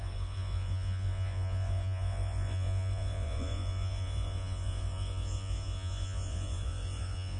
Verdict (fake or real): fake